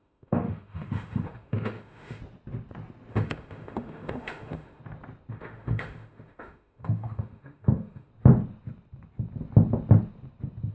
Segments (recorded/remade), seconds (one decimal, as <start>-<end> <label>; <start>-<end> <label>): 0.0-2.2 remade; 2.2-3.1 recorded; 3.1-4.8 remade; 4.8-5.3 recorded; 5.3-8.1 remade; 8.1-10.7 recorded